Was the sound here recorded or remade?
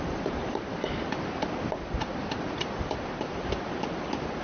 remade